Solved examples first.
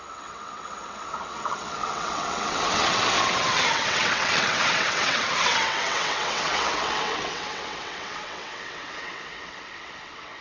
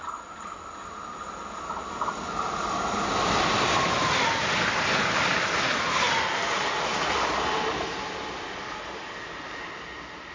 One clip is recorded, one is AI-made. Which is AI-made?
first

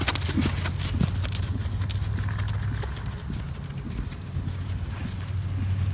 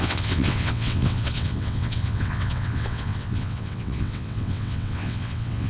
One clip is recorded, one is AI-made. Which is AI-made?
second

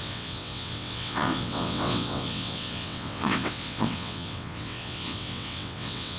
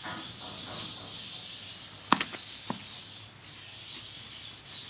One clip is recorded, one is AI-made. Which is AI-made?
first